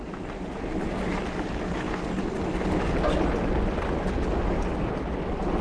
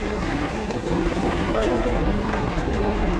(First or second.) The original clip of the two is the first